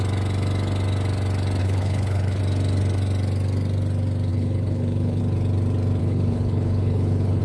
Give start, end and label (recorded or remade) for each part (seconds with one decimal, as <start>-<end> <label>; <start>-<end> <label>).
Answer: 0.0-1.6 recorded; 1.6-2.4 remade; 2.4-4.3 recorded; 4.3-5.2 remade; 5.2-6.0 recorded; 6.0-7.4 remade